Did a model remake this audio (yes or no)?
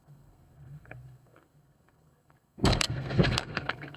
yes